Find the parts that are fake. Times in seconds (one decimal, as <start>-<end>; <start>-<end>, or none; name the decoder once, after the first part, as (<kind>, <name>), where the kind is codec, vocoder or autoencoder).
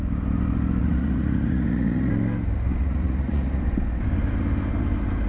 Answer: 0.8-2.1 (vocoder, Vocos); 2.8-3.6